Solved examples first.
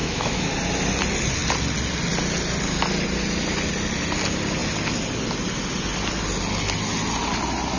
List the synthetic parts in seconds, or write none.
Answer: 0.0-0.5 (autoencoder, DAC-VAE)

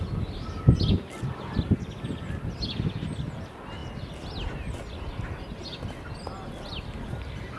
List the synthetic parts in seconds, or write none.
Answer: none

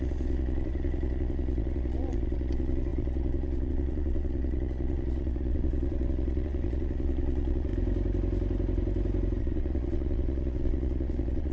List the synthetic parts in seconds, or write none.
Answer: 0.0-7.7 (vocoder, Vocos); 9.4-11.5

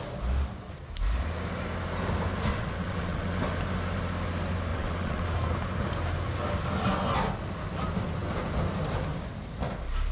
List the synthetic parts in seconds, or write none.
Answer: 2.5-3.3 (vocoder, WaveNeXt); 4.7-5.2

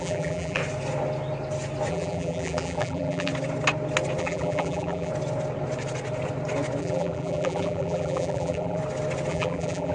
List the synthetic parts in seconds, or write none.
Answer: 0.0-0.6 (vocoder, BigVGAN v2); 1.9-3.3; 4.2-5.1; 6.8-8.8; 9.3-9.9